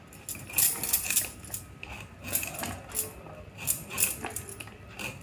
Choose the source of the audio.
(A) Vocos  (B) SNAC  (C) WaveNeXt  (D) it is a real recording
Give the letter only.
D